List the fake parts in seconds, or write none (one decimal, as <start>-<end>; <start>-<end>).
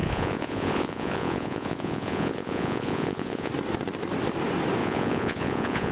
0.0-3.5; 4.8-5.9